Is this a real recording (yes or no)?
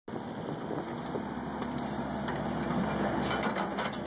yes